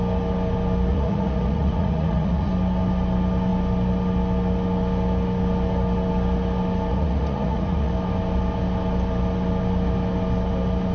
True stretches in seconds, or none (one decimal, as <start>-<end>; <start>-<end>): 0.0-0.9; 2.5-6.9; 7.9-10.9